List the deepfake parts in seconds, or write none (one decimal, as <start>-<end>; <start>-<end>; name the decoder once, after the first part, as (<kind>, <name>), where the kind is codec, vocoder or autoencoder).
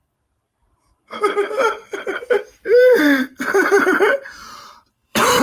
0.0-5.4 (vocoder, BigVGAN v2)